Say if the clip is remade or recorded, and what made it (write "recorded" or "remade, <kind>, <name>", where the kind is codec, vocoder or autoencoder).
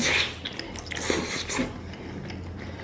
recorded